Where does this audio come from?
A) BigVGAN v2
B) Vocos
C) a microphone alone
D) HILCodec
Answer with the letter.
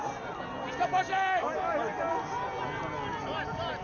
C